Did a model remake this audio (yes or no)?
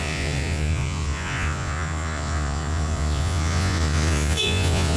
yes